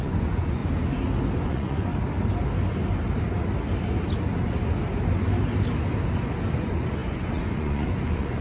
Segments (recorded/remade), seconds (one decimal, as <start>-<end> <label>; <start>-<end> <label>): 0.0-0.6 remade; 0.6-1.4 recorded; 1.4-1.9 remade; 1.9-6.6 recorded; 6.6-8.4 remade